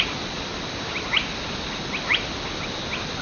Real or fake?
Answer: real